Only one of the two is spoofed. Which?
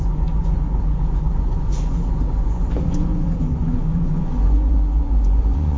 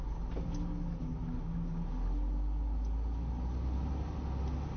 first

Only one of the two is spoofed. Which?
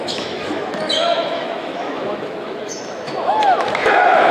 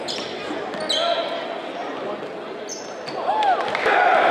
first